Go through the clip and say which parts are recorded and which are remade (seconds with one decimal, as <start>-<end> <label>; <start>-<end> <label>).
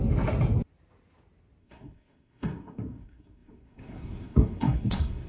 0.0-1.6 recorded; 1.6-5.3 remade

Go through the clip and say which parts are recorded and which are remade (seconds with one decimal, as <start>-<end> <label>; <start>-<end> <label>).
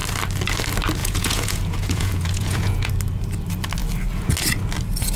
0.0-1.0 recorded; 1.0-2.9 remade; 2.9-5.2 recorded